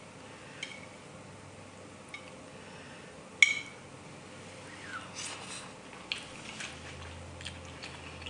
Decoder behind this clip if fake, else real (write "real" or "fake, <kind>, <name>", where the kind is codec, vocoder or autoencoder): real